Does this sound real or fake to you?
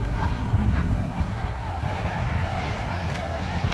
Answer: fake